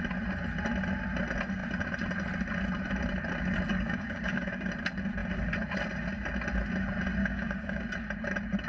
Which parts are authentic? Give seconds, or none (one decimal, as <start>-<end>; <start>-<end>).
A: 0.0-3.7; 4.7-7.2; 7.9-8.7